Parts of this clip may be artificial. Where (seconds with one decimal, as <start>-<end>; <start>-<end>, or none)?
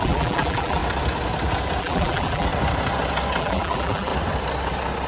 0.0-0.8; 1.8-2.5; 3.4-4.1